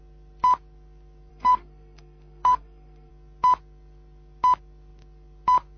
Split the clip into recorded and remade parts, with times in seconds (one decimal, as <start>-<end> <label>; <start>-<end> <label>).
0.0-1.3 recorded; 1.3-3.1 remade; 3.1-5.8 recorded